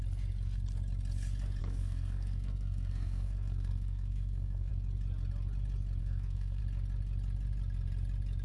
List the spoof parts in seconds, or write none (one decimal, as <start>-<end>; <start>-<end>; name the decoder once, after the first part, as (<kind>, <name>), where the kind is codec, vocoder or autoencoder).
1.6-4.7 (codec, SNAC); 6.0-6.6